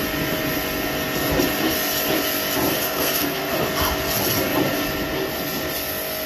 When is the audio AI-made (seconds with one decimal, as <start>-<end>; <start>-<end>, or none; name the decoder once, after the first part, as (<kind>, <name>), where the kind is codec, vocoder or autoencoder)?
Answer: 2.7-3.5 (codec, SNAC)